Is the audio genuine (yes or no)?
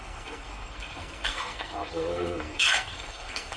no